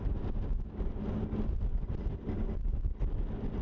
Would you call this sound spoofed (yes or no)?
no